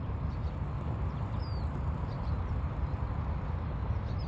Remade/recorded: recorded